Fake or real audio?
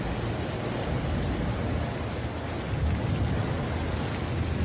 real